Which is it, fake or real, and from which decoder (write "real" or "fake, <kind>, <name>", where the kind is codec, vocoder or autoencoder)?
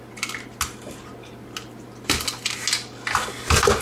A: real